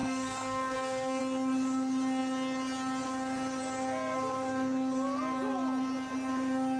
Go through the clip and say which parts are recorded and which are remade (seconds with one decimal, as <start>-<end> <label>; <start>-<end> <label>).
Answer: 0.0-1.2 remade; 1.2-6.8 recorded